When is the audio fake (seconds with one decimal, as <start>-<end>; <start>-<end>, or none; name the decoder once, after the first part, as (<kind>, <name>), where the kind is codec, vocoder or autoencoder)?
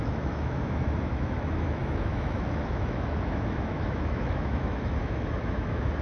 0.0-6.0 (autoencoder, DAC-VAE)